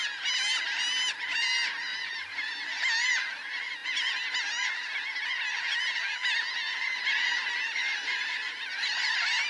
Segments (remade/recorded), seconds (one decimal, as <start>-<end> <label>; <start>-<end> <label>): 0.0-1.9 recorded; 1.9-2.8 remade; 2.8-7.8 recorded; 7.8-9.5 remade